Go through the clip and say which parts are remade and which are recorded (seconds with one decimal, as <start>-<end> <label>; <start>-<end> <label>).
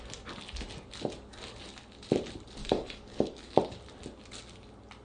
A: 0.0-2.6 recorded; 2.6-3.6 remade; 3.6-5.0 recorded